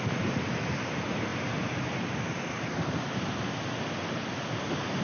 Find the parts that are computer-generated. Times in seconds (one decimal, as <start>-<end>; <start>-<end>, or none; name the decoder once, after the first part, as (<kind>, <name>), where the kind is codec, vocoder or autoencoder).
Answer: none